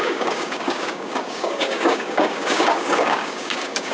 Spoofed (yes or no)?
yes